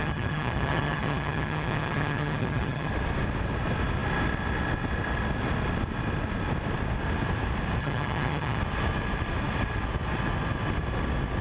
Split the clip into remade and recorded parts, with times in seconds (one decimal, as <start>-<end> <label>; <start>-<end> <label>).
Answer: 0.0-2.9 remade; 2.9-7.8 recorded; 7.8-8.6 remade; 8.6-11.4 recorded